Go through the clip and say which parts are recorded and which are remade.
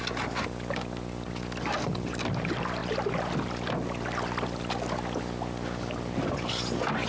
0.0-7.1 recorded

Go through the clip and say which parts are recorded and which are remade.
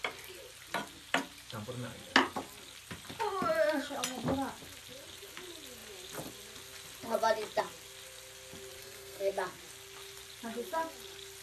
0.0-8.8 recorded; 8.8-9.3 remade; 9.3-11.4 recorded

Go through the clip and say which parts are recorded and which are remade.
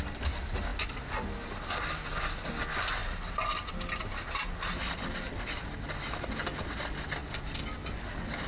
0.0-8.5 recorded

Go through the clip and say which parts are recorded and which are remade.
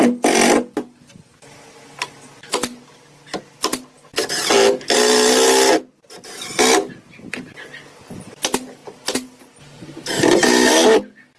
0.0-11.4 recorded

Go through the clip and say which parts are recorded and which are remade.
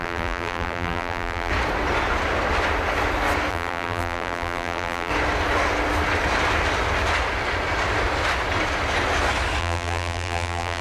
0.0-1.5 remade; 1.5-3.5 recorded; 3.5-5.1 remade; 5.1-9.6 recorded; 9.6-10.8 remade